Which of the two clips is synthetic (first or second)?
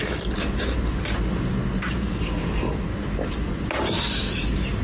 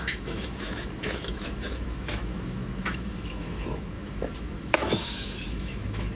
second